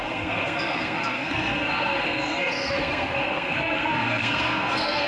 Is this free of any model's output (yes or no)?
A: no